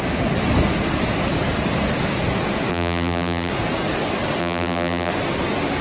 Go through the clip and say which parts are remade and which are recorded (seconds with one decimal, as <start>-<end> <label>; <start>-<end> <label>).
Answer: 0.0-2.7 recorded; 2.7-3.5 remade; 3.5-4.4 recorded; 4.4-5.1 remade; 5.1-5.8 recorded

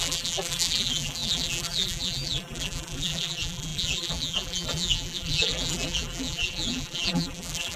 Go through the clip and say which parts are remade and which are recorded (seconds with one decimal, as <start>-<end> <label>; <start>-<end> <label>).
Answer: 0.0-7.8 remade

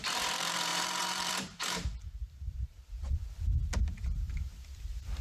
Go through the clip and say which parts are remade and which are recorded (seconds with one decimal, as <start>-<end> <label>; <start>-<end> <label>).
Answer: 0.0-3.2 remade; 3.2-4.0 recorded; 4.0-5.2 remade

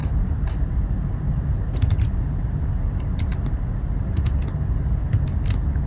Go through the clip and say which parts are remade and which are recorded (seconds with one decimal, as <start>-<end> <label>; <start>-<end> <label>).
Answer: 0.0-5.9 recorded

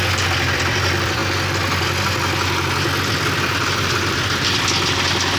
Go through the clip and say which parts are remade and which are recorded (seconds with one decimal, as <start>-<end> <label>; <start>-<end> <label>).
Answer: 0.0-1.2 remade; 1.2-3.1 recorded; 3.1-5.4 remade